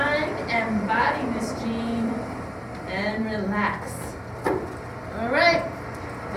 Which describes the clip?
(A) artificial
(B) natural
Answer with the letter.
B